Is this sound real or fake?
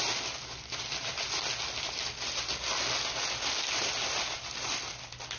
real